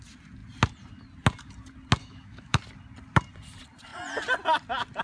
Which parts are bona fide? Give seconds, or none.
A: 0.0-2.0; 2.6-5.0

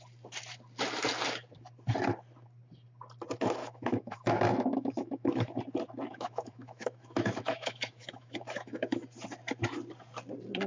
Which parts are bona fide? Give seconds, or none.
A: 0.0-3.6; 5.6-6.1; 9.0-10.7

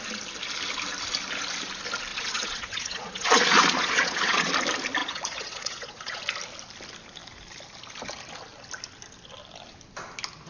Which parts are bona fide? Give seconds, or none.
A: 0.0-2.1; 4.5-5.0; 6.2-10.5

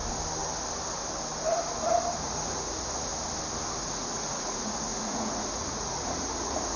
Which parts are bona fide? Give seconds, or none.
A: 0.0-2.2; 3.1-3.8